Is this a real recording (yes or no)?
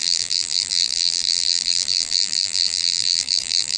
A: no